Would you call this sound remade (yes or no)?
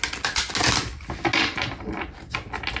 no